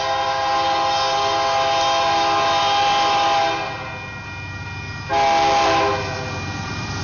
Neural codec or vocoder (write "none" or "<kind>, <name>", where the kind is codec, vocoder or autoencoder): none